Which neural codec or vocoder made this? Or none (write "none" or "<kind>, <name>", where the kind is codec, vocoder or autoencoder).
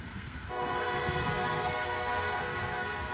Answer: codec, SNAC